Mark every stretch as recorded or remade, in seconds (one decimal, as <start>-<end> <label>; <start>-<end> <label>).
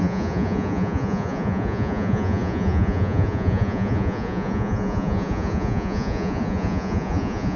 0.0-7.6 remade